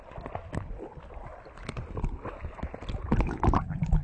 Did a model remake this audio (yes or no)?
no